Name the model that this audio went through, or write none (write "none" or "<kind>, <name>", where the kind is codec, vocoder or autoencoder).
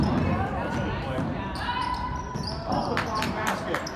vocoder, BigVGAN v2